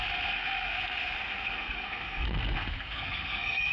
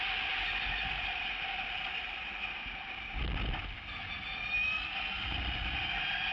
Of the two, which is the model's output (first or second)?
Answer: first